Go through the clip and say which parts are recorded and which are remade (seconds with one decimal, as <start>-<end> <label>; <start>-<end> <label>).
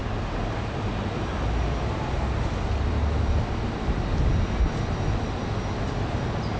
0.0-6.6 recorded